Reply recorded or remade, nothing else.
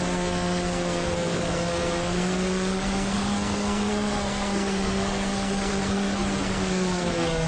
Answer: remade